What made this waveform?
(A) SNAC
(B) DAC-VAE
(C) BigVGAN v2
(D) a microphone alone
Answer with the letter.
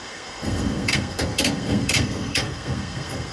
A